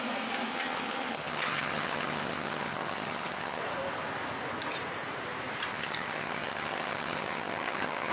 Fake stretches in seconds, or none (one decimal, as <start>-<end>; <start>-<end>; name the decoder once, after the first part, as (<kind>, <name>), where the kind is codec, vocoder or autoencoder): 0.5-3.6 (vocoder, HiFi-GAN); 5.7-8.1